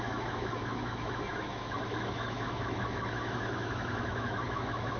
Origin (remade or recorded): remade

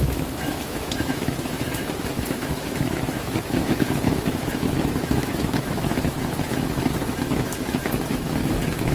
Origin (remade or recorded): remade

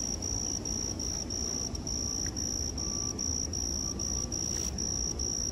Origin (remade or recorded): recorded